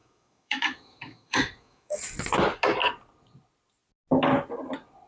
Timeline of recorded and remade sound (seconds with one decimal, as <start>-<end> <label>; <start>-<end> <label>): 0.0-2.0 remade; 2.0-5.1 recorded